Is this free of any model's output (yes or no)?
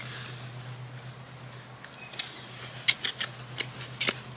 yes